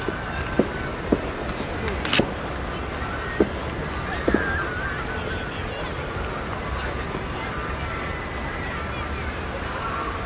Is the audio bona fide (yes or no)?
yes